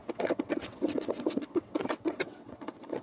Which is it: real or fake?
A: fake